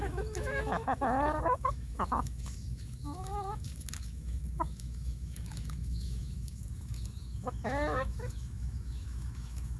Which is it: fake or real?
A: fake